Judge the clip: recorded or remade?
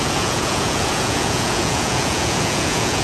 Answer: remade